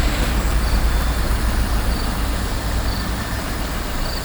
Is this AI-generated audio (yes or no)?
no